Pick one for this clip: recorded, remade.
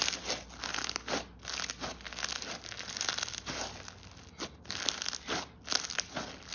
recorded